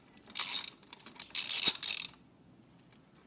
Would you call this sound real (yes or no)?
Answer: yes